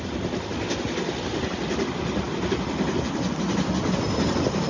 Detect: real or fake real